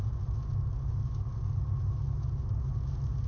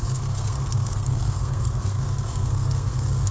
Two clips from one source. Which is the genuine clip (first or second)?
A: first